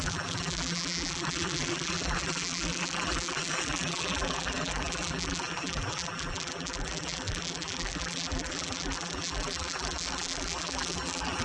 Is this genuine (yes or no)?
no